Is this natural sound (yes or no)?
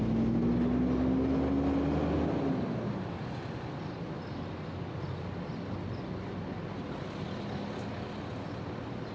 yes